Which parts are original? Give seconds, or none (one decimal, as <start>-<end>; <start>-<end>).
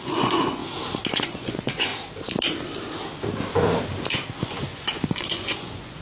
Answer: 0.6-1.1; 1.9-4.4